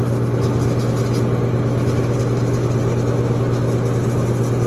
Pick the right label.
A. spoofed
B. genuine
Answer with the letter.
B